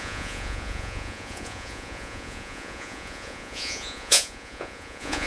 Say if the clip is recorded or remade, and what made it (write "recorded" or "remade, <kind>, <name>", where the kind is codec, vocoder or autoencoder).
remade, vocoder, Vocos